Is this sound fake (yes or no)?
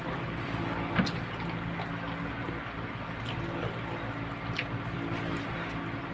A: no